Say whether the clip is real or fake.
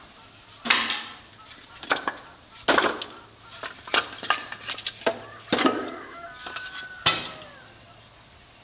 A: real